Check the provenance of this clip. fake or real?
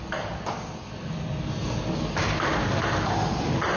real